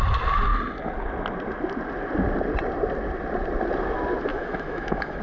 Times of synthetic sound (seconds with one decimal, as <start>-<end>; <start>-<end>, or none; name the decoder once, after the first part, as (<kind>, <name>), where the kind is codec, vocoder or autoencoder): 4.3-5.2 (autoencoder, DAC-VAE)